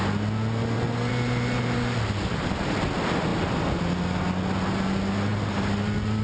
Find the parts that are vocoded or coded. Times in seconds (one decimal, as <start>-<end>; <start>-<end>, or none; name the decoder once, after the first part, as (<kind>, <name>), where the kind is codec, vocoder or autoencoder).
none